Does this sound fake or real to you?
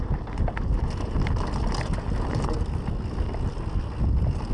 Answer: real